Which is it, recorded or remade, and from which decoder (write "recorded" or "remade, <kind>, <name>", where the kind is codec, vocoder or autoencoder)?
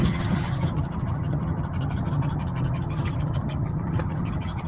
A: remade, vocoder, HiFi-GAN